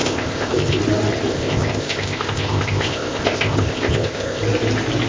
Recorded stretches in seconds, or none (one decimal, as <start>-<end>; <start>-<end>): 0.8-1.3; 4.4-5.1